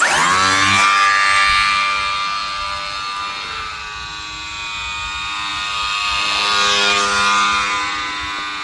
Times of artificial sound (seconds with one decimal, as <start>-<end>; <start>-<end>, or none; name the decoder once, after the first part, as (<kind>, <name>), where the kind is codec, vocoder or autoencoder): none